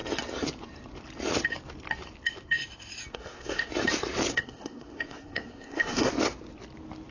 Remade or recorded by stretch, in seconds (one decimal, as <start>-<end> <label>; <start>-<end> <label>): 0.0-3.1 recorded; 3.1-3.7 remade; 3.7-4.3 recorded; 4.3-6.1 remade; 6.1-7.1 recorded